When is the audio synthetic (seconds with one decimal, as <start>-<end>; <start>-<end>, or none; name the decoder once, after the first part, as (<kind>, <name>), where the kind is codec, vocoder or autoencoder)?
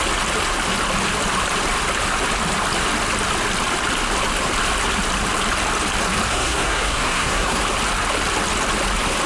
6.3-7.6 (codec, SNAC)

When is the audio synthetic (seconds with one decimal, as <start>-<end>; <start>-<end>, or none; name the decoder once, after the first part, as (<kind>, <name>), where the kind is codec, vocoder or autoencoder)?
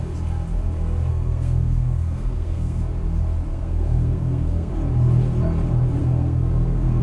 1.1-2.8 (codec, SNAC); 3.5-4.7; 6.0-7.0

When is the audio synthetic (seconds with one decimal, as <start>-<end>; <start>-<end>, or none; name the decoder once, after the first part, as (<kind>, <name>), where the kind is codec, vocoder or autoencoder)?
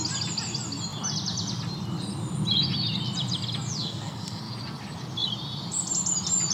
3.8-4.5 (codec, SNAC)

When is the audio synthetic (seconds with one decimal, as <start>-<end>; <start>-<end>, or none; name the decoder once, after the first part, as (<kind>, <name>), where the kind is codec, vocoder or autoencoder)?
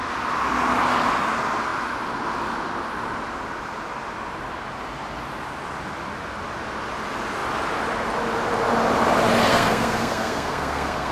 9.5-11.1 (codec, SNAC)